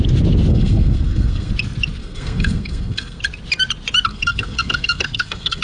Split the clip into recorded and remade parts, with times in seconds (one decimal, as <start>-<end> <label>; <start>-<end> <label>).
0.0-0.5 recorded; 0.5-1.5 remade; 1.5-2.0 recorded; 2.0-3.2 remade; 3.2-4.1 recorded; 4.1-5.6 remade